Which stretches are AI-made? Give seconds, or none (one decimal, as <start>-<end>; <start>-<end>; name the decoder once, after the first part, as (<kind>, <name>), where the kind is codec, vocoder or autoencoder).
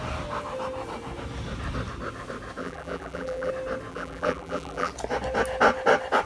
2.6-3.5 (vocoder, BigVGAN v2); 3.9-4.9